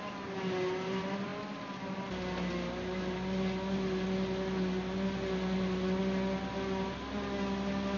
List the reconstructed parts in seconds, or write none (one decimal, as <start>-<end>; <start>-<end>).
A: none